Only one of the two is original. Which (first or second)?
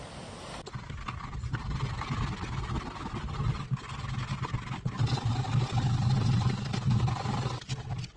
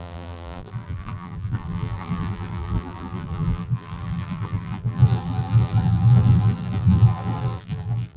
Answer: first